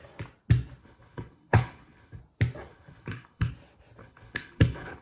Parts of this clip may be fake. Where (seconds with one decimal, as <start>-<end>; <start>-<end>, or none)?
0.8-2.2; 2.7-3.5; 4.0-5.0